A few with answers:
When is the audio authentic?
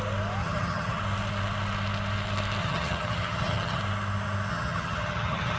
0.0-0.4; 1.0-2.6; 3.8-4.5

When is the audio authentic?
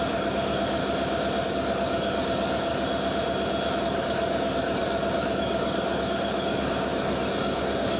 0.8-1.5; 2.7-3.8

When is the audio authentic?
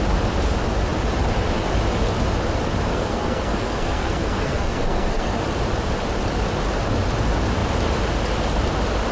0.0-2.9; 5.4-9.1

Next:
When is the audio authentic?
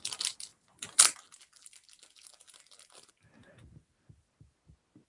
0.0-0.5; 3.1-5.1